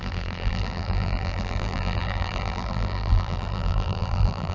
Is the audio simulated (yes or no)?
yes